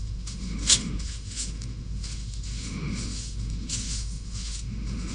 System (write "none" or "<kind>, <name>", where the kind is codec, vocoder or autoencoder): autoencoder, DAC-VAE